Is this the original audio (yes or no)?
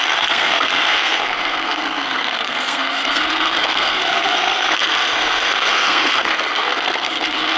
no